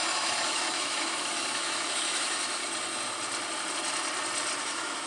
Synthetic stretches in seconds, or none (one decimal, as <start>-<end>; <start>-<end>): 0.0-2.6; 4.6-5.1